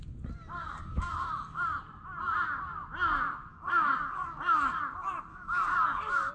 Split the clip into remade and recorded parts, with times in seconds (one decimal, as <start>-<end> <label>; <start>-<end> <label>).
0.0-0.6 recorded; 0.6-1.6 remade; 1.6-3.5 recorded; 3.5-4.8 remade; 4.8-5.3 recorded; 5.3-6.3 remade

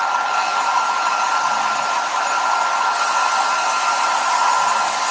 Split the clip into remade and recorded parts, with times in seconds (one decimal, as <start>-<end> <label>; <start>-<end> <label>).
0.0-5.1 recorded

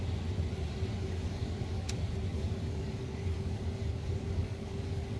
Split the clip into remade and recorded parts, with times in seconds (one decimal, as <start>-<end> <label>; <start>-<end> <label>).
0.0-1.0 recorded; 1.0-1.9 remade; 1.9-2.3 recorded; 2.3-5.2 remade

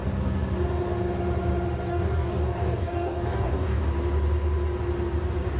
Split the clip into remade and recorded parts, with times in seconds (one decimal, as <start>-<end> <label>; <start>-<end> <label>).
0.0-1.9 recorded; 1.9-3.8 remade; 3.8-5.6 recorded

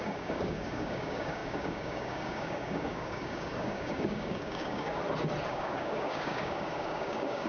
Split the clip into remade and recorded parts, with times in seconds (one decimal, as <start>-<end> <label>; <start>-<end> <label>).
0.0-5.0 remade; 5.0-5.5 recorded; 5.5-7.5 remade

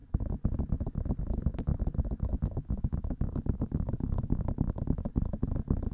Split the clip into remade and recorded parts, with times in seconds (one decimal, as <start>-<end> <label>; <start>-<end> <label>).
0.0-1.2 recorded; 1.2-1.7 remade; 1.7-2.3 recorded; 2.3-5.1 remade; 5.1-5.9 recorded